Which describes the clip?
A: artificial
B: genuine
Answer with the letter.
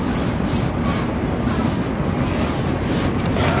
B